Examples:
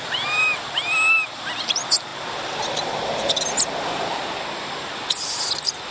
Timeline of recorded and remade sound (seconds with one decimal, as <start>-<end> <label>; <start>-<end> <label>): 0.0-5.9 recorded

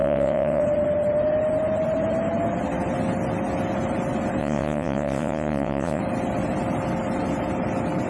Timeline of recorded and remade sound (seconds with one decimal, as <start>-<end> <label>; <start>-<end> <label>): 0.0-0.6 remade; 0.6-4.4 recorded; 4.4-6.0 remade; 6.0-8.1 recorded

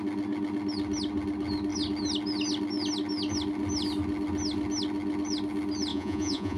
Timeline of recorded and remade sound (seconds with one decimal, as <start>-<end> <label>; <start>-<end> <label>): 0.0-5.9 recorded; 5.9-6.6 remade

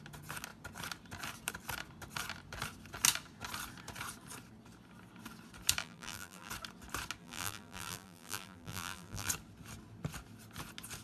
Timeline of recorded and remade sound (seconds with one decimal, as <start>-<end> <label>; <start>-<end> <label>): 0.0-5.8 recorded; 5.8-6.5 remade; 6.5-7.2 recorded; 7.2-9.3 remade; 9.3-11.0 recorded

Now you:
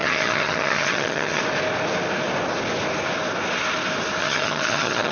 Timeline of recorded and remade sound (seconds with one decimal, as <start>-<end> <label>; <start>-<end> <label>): 0.0-1.4 remade; 1.4-4.2 recorded; 4.2-5.1 remade

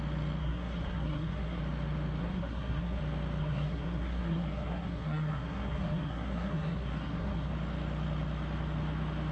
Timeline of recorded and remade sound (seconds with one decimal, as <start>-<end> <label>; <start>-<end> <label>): 0.0-0.4 recorded; 0.4-1.6 remade; 1.6-2.2 recorded; 2.2-3.0 remade; 3.0-3.4 recorded; 3.4-7.5 remade; 7.5-9.3 recorded

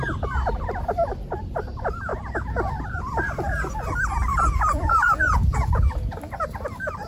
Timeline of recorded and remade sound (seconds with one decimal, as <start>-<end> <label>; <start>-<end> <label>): 0.0-4.3 recorded; 4.3-5.9 remade; 5.9-7.1 recorded

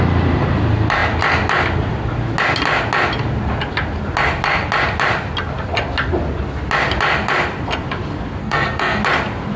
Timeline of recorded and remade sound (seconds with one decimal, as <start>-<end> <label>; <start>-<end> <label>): 0.0-8.4 recorded; 8.4-9.0 remade; 9.0-9.6 recorded